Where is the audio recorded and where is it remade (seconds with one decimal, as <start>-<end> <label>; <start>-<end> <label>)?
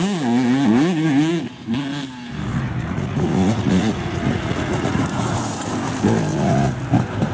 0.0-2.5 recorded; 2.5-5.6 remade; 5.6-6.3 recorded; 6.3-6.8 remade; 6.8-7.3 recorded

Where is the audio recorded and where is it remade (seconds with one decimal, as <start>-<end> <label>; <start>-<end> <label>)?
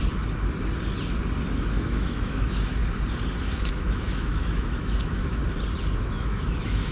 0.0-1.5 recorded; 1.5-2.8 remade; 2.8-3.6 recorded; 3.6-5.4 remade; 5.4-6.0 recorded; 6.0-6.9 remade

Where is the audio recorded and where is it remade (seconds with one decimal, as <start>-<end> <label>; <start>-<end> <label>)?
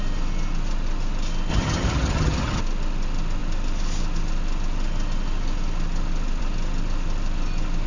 0.0-1.5 recorded; 1.5-2.6 remade; 2.6-7.9 recorded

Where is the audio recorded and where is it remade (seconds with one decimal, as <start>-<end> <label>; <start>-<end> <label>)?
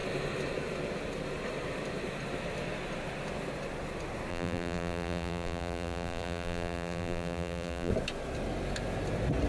0.0-4.3 recorded; 4.3-7.9 remade; 7.9-9.5 recorded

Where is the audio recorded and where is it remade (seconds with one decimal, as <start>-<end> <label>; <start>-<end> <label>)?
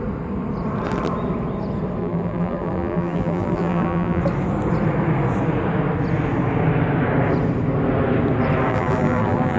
0.0-2.0 recorded; 2.0-4.2 remade; 4.2-8.7 recorded; 8.7-9.6 remade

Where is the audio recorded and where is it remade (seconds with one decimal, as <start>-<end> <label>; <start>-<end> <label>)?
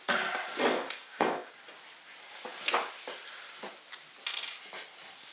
0.0-0.7 recorded; 0.7-1.5 remade; 1.5-5.3 recorded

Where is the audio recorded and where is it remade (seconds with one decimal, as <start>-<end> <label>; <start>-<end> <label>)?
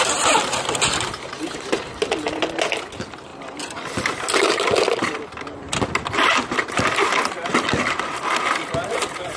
0.0-9.4 recorded